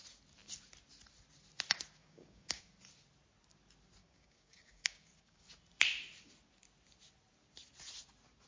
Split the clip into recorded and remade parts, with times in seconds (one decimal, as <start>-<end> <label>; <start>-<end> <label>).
0.0-2.0 recorded; 2.0-2.6 remade; 2.6-4.0 recorded; 4.0-5.4 remade; 5.4-8.5 recorded